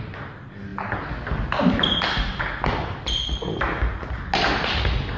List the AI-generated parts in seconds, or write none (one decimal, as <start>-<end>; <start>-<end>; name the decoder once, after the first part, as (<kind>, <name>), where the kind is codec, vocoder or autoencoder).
none